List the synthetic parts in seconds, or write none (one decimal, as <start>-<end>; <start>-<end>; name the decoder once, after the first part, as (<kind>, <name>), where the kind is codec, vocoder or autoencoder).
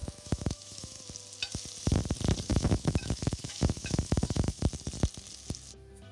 0.0-1.0 (autoencoder, DAC-VAE); 2.5-4.6